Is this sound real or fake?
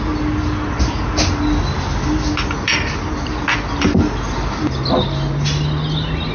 real